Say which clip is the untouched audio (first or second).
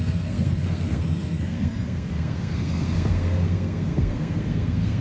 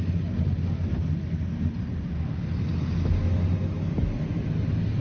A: second